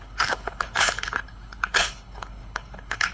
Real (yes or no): no